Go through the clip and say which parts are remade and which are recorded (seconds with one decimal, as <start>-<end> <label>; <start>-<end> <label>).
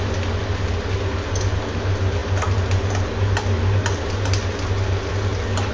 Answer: 0.0-5.7 recorded